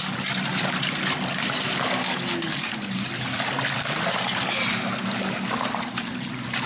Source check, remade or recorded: recorded